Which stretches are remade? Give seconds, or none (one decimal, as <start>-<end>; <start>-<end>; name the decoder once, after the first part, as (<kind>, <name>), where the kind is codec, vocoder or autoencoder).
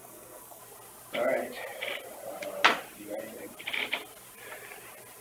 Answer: 0.0-0.6 (codec, SNAC)